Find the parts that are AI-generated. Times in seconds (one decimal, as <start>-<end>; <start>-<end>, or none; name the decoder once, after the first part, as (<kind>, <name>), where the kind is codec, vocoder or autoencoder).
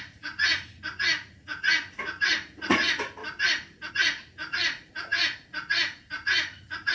0.0-3.2 (vocoder, Vocos); 3.9-6.9